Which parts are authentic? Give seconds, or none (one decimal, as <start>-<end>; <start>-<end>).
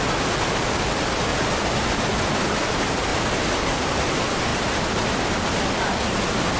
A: 0.0-1.3; 1.9-3.1; 4.1-6.6